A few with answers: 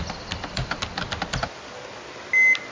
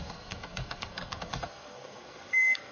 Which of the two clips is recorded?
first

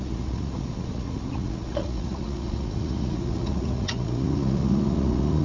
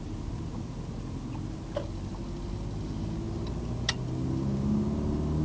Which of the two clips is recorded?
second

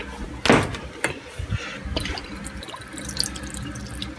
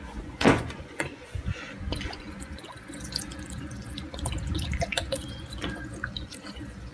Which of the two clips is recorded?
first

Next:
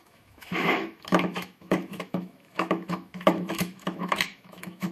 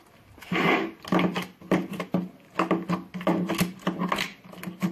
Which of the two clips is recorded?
second